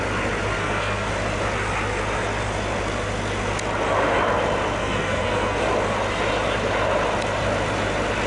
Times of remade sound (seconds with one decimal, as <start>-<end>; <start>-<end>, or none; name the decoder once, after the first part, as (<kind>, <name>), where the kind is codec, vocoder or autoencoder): 0.6-1.1 (codec, SNAC); 4.8-5.6